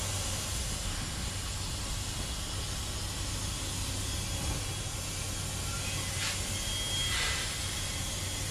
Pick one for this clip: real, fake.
real